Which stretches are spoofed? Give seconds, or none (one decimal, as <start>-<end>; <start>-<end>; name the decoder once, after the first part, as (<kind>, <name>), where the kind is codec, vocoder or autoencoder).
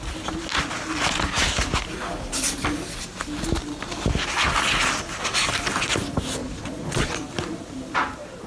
6.4-7.1 (vocoder, Vocos)